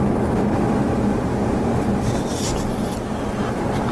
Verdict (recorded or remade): recorded